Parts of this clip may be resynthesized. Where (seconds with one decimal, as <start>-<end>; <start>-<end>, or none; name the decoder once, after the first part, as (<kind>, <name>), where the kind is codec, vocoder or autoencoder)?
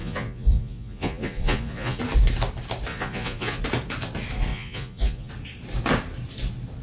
0.0-2.0 (vocoder, Vocos); 2.9-3.6; 4.5-5.3